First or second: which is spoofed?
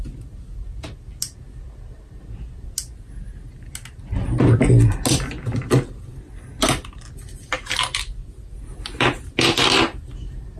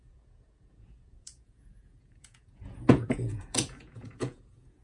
second